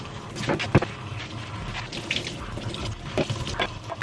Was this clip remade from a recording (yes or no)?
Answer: no